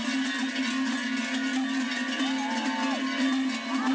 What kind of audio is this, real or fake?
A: real